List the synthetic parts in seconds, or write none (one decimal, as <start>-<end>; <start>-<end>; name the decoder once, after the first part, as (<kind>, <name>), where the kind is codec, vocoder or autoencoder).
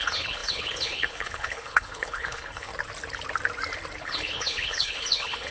0.0-2.7 (codec, HILCodec); 4.0-5.5